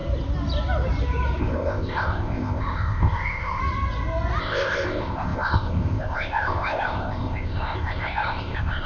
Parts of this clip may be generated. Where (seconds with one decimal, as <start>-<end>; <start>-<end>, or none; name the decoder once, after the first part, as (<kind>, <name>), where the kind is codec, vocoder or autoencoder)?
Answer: 1.4-3.6 (codec, ZipCodec); 4.4-8.9